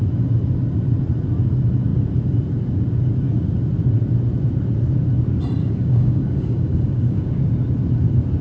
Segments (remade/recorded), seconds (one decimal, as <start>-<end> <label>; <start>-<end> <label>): 0.0-5.6 recorded; 5.6-7.4 remade; 7.4-8.4 recorded